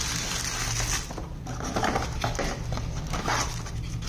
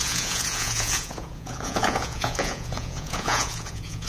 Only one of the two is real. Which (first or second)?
first